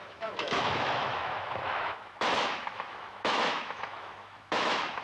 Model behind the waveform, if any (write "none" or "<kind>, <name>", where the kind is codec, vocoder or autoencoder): autoencoder, DAC-VAE